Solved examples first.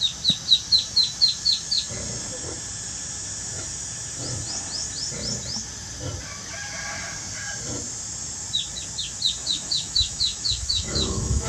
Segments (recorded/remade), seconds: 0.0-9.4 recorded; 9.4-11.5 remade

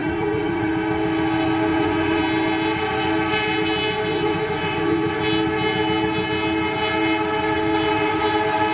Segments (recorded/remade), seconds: 0.0-0.7 remade; 0.7-1.7 recorded; 1.7-2.2 remade; 2.2-4.1 recorded; 4.1-5.2 remade; 5.2-8.7 recorded

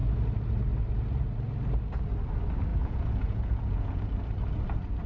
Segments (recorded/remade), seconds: 0.0-2.7 recorded; 2.7-4.0 remade; 4.0-5.1 recorded